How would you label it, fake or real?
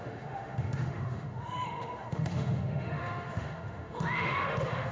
fake